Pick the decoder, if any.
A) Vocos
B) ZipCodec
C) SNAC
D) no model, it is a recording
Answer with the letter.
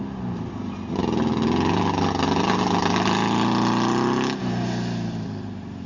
D